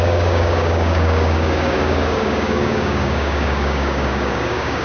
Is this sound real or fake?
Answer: fake